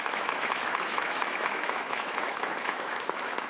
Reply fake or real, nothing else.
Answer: fake